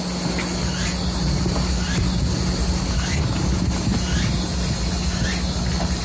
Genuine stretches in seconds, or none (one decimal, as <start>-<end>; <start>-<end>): 0.0-6.0